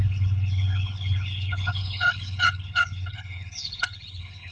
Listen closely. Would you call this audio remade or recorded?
remade